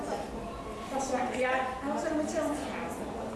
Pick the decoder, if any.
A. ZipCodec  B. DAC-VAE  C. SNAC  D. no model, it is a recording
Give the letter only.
D